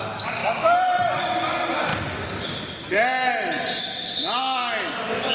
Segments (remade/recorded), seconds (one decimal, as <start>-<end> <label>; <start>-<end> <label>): 0.0-5.3 recorded